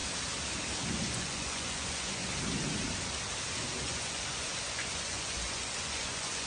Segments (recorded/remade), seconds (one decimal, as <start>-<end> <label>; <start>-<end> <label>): 0.0-0.9 recorded; 0.9-2.2 remade; 2.2-3.7 recorded; 3.7-6.5 remade